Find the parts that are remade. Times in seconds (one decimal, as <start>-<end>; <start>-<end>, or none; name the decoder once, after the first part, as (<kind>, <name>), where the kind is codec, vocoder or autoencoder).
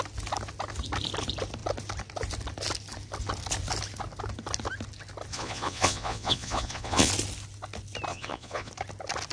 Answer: 5.3-7.1 (vocoder, Vocos); 8.1-8.7